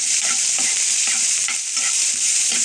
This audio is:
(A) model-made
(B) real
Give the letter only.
A